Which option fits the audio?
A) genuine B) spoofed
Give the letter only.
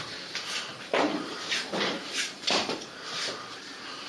B